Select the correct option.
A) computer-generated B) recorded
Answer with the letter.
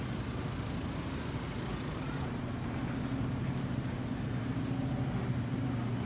B